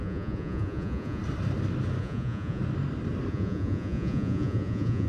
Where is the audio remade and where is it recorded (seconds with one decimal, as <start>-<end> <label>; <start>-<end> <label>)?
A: 0.0-1.2 remade; 1.2-2.0 recorded; 2.0-2.6 remade; 2.6-3.3 recorded; 3.3-5.1 remade

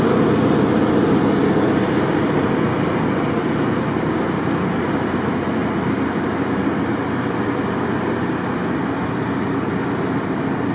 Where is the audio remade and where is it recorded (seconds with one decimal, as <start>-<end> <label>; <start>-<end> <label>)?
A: 0.0-10.7 recorded